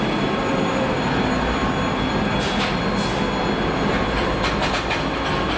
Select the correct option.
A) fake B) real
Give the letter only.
B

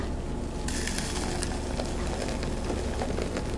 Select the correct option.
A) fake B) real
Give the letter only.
B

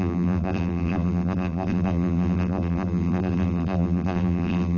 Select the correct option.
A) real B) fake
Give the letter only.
B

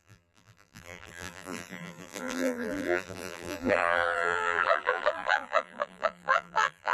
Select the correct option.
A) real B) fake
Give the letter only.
B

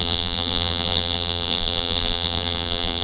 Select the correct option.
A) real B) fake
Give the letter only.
B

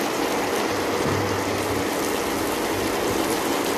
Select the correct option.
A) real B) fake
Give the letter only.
A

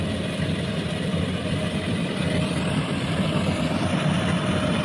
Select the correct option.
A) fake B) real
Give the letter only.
A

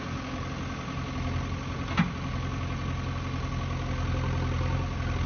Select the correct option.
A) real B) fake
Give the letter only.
A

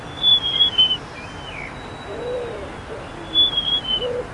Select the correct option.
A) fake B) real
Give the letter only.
B